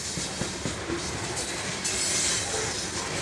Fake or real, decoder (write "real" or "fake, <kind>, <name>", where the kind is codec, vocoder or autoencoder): real